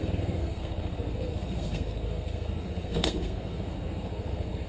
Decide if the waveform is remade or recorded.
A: remade